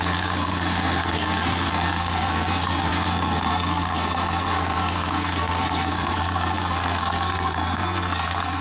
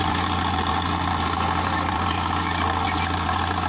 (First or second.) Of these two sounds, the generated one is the first